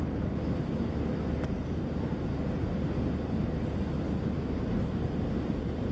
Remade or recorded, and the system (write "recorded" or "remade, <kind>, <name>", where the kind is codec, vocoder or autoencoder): recorded